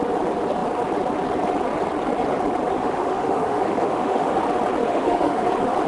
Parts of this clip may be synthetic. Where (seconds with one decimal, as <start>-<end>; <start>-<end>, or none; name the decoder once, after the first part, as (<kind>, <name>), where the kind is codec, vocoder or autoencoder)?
2.7-4.4 (autoencoder, DAC-VAE); 4.9-5.5